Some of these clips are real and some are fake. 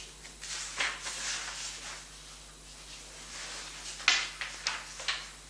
real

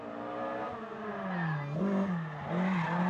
real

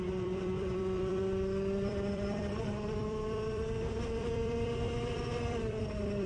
fake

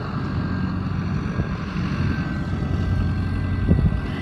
real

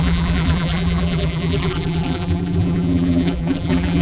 fake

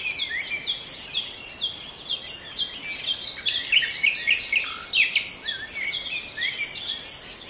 real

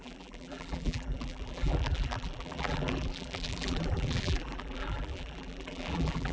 fake